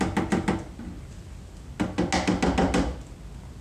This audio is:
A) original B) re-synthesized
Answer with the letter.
A